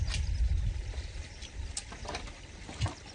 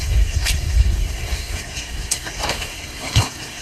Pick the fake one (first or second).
second